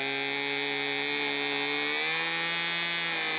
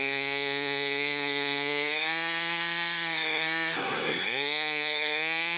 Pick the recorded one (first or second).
first